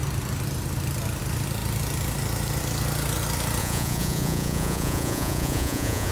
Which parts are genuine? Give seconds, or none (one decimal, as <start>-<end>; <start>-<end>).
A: 0.0-3.6